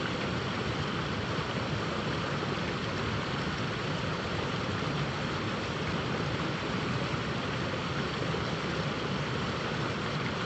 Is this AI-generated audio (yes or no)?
no